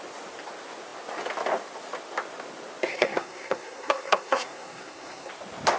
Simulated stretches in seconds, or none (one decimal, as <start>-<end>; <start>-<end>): 2.9-5.3